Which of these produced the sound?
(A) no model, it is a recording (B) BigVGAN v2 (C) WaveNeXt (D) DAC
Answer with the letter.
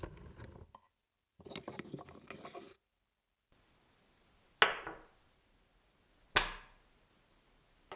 A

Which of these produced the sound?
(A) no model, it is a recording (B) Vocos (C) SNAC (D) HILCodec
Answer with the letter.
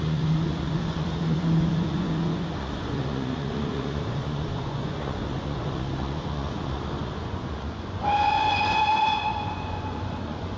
B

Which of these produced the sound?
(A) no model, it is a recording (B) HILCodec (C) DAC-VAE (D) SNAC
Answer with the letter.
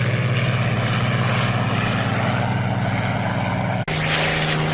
A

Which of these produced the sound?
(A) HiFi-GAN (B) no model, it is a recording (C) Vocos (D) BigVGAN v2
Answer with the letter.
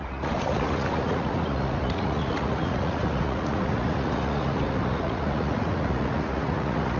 C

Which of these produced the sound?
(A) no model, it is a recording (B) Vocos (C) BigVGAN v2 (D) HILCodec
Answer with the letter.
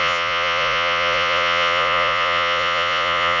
B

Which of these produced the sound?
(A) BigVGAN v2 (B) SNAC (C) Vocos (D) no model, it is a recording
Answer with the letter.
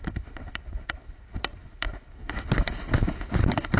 D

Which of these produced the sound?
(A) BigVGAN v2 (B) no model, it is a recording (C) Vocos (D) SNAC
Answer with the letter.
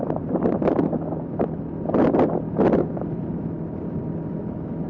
B